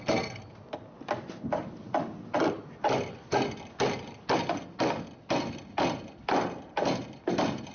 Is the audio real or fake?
real